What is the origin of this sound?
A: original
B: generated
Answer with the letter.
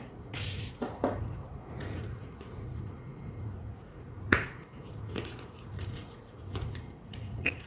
B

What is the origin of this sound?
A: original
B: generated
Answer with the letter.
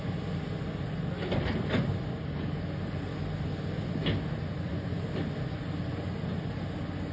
A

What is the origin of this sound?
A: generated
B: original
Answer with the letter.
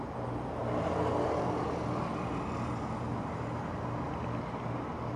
B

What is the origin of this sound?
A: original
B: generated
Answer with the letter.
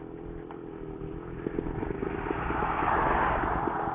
A